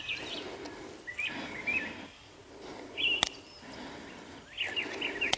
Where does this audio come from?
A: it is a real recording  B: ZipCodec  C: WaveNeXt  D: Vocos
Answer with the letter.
A